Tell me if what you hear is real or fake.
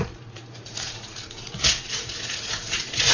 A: fake